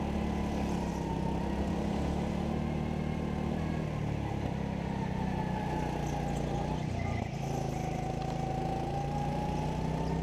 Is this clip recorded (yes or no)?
yes